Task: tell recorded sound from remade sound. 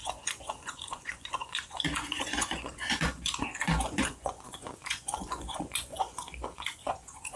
remade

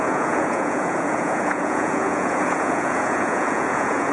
remade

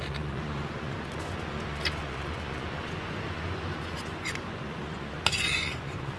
remade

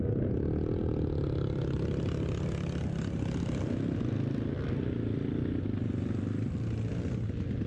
recorded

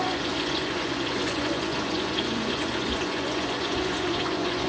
remade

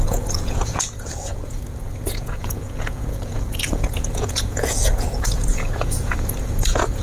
remade